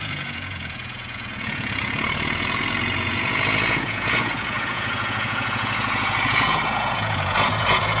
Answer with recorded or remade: remade